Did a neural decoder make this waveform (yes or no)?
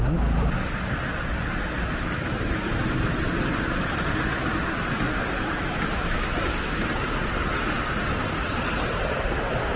no